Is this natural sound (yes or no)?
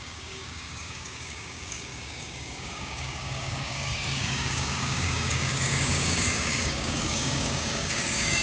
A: no